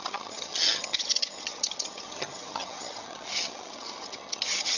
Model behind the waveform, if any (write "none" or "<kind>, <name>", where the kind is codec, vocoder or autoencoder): vocoder, HiFi-GAN